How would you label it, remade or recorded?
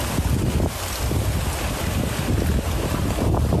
recorded